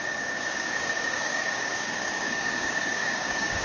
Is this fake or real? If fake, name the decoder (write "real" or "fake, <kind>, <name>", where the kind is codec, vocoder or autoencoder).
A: fake, codec, DAC